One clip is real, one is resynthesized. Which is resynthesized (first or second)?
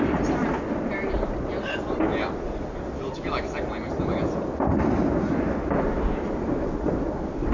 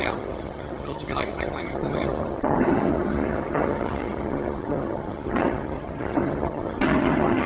second